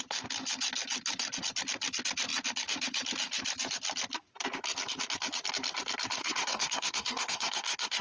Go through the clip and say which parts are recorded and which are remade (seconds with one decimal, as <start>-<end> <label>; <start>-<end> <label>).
0.0-6.2 recorded; 6.2-8.0 remade